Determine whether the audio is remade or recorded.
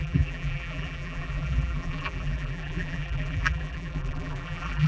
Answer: remade